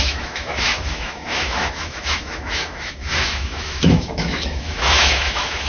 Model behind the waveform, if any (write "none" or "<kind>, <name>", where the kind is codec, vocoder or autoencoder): autoencoder, DAC-VAE